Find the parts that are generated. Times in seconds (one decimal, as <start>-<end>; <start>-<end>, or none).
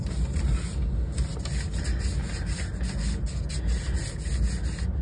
none